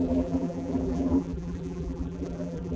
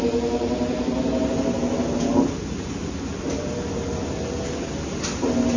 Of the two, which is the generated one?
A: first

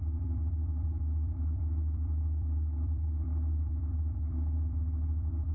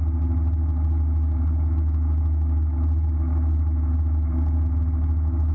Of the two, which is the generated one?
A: first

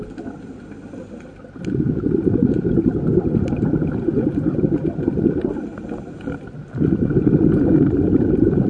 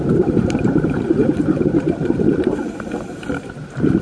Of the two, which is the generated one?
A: second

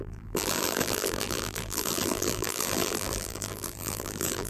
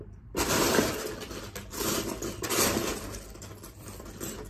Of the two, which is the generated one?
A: first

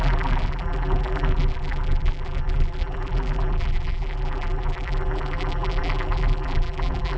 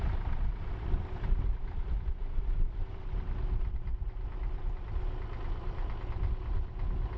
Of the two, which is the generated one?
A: first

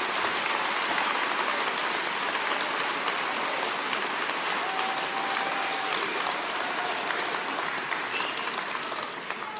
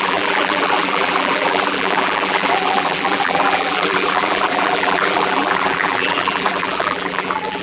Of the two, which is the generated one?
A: second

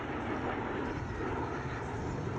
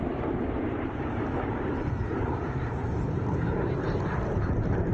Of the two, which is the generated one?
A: second